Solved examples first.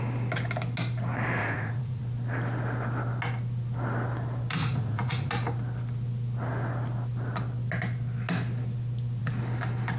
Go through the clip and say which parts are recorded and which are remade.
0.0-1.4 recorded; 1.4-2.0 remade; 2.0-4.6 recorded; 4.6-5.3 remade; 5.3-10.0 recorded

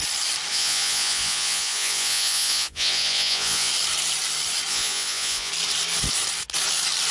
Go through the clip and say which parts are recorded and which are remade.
0.0-0.5 recorded; 0.5-3.7 remade; 3.7-4.7 recorded; 4.7-5.5 remade; 5.5-7.1 recorded

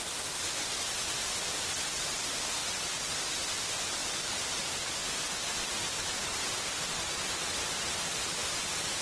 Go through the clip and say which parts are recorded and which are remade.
0.0-2.6 recorded; 2.6-3.3 remade; 3.3-4.0 recorded; 4.0-7.3 remade; 7.3-8.4 recorded; 8.4-9.0 remade

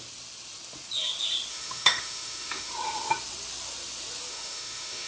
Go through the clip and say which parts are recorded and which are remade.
0.0-1.5 recorded; 1.5-2.7 remade; 2.7-4.3 recorded; 4.3-5.1 remade

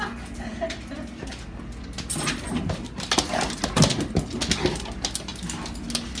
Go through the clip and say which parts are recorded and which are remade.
0.0-6.2 recorded

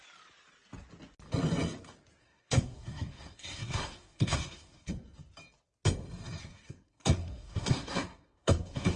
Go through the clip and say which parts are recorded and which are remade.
0.0-2.2 recorded; 2.2-4.9 remade; 4.9-6.4 recorded; 6.4-9.0 remade

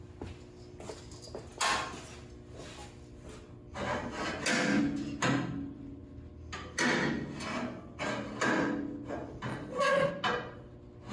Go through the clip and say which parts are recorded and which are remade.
0.0-9.5 recorded; 9.5-10.1 remade; 10.1-11.1 recorded

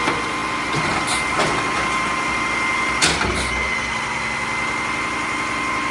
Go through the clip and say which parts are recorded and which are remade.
0.0-5.9 recorded